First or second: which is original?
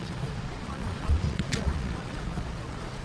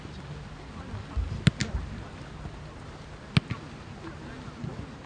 second